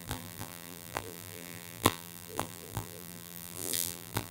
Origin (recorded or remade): remade